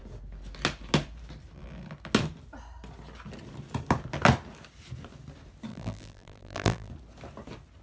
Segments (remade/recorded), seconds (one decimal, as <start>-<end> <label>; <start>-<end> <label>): 0.0-5.7 recorded; 5.7-6.9 remade; 6.9-7.8 recorded